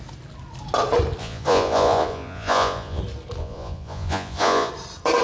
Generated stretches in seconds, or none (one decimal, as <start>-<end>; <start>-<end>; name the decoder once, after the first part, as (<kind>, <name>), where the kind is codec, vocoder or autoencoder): 1.2-3.0 (vocoder, Vocos); 3.4-4.7